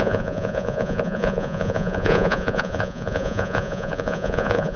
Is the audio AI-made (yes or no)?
yes